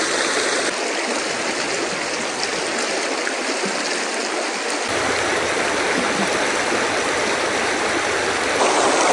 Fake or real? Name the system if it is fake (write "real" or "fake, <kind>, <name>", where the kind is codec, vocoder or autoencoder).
real